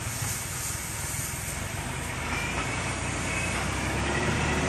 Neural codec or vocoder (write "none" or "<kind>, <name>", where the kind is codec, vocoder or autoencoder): none